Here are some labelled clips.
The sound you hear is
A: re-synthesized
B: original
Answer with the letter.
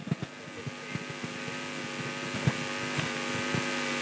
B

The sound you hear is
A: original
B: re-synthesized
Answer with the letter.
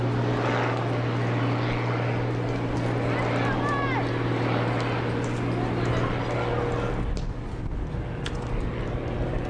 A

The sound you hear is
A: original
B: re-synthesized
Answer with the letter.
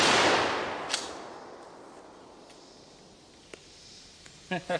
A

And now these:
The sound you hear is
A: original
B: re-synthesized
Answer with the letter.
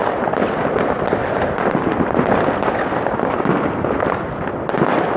A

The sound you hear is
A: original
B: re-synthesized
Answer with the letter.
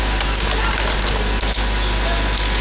A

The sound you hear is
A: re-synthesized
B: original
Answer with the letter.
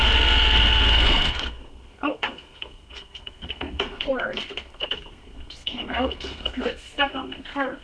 A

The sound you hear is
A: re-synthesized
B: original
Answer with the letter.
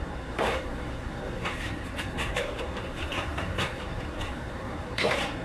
A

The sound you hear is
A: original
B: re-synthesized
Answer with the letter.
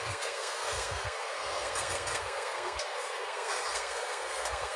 B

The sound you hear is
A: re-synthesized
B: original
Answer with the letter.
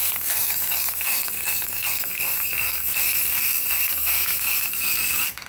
A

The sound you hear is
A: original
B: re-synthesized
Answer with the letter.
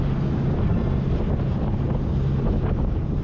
A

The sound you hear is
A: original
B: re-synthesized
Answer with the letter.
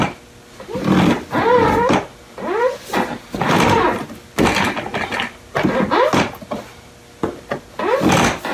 A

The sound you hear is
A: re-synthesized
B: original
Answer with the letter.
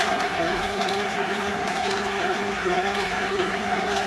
A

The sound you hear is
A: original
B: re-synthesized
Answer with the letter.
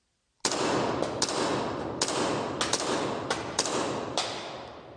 A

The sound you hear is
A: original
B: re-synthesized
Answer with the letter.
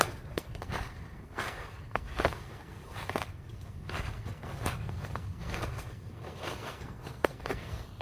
B